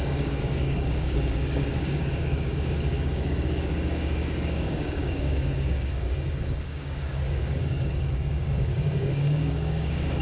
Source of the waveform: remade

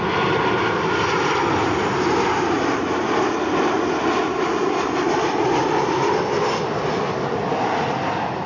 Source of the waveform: recorded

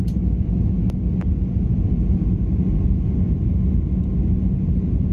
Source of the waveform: recorded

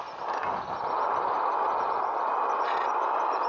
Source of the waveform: recorded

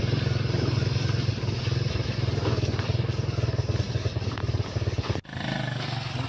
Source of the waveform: recorded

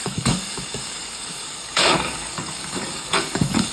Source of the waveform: remade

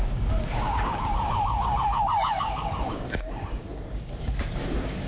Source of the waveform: remade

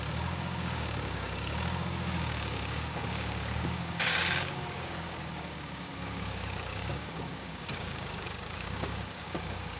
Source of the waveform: remade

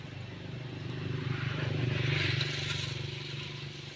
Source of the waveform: recorded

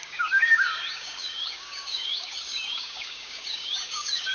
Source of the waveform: remade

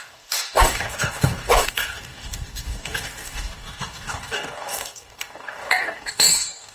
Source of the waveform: remade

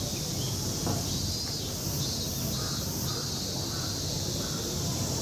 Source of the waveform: recorded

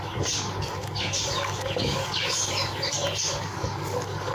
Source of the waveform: remade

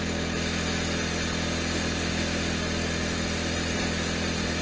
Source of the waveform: recorded